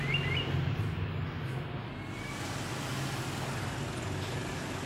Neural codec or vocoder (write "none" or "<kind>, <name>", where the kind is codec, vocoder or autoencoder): none